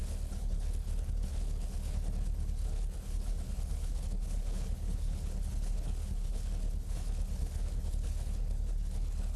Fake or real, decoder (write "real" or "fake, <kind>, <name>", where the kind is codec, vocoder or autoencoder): fake, codec, HILCodec